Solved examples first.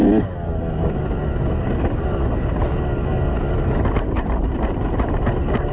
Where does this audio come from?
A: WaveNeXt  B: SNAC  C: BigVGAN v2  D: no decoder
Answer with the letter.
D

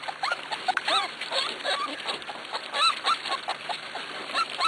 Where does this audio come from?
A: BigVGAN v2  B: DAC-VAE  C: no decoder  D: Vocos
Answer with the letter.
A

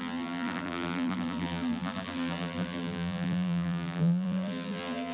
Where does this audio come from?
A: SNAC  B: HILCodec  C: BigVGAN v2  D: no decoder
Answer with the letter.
C